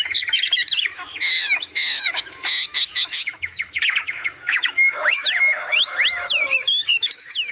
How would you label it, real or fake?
fake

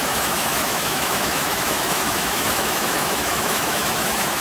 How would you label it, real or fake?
fake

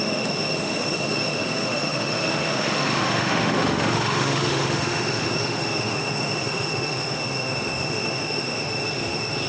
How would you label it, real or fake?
fake